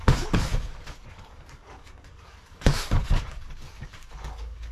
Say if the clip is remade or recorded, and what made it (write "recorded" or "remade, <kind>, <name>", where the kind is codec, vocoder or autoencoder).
remade, codec, DAC